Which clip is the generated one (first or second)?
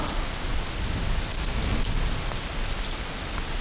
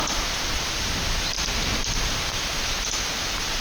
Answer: second